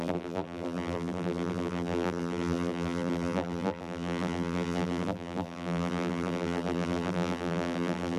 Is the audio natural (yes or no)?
no